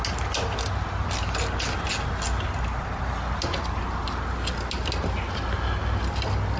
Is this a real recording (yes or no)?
yes